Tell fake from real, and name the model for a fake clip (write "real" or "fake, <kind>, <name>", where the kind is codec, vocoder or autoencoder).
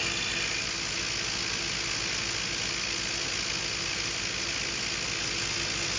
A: real